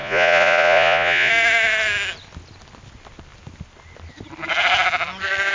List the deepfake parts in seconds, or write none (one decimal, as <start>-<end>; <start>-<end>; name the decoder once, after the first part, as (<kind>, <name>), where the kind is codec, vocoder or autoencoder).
0.0-1.3 (vocoder, Vocos)